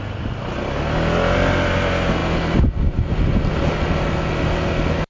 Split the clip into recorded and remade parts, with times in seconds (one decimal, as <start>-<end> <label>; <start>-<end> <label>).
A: 0.0-5.1 recorded